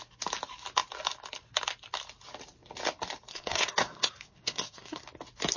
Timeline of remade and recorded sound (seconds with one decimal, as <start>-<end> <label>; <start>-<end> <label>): 0.0-3.3 recorded; 3.3-5.0 remade; 5.0-5.6 recorded